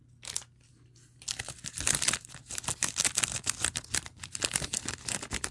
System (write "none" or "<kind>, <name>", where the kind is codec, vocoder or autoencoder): none